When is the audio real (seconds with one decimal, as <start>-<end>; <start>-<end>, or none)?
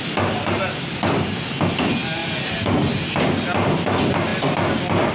0.0-5.1